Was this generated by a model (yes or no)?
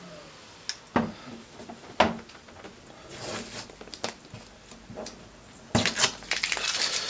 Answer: no